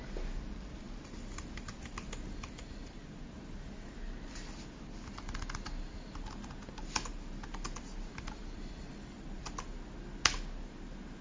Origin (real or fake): real